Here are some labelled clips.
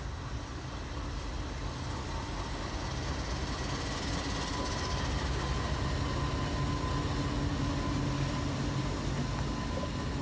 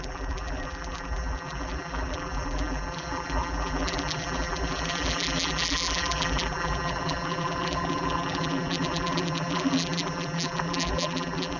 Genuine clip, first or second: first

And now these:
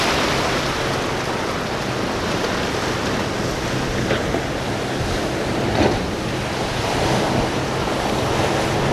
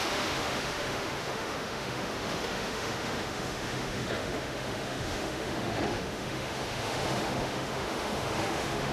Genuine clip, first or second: first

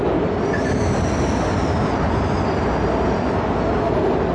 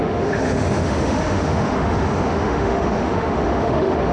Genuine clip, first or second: first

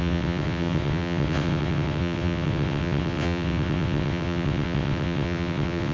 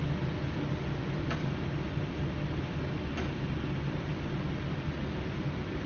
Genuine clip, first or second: second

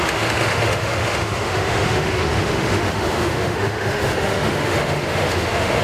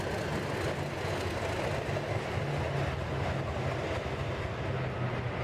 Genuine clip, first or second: second